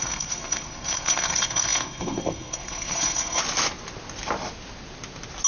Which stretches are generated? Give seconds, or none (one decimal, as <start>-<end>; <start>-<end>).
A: 0.0-3.4